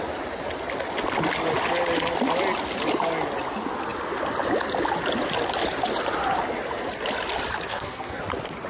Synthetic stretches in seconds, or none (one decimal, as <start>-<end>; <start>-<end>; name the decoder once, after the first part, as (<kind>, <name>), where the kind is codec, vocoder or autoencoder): 7.7-8.2 (codec, SNAC)